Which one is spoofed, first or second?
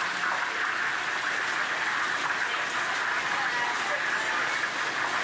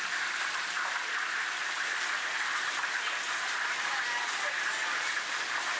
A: second